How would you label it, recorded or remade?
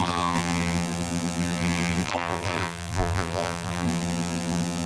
remade